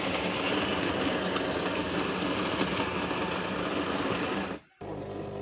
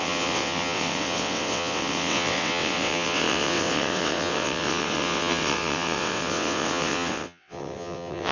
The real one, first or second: first